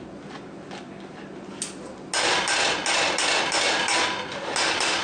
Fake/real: real